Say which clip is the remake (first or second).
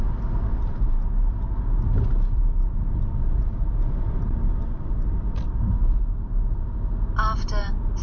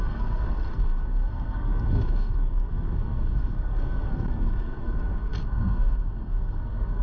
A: second